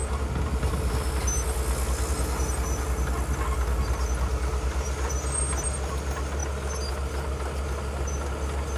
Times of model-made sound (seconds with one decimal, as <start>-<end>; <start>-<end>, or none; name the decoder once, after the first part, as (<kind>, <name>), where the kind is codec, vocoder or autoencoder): none